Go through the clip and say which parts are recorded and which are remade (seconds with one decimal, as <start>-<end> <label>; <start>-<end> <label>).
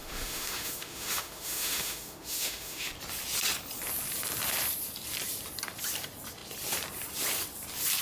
0.0-2.9 remade; 2.9-8.0 recorded